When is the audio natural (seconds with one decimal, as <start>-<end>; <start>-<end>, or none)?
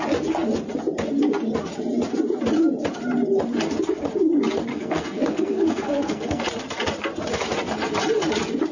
0.0-4.7; 6.4-8.7